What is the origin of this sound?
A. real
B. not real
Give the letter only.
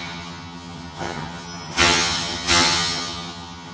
B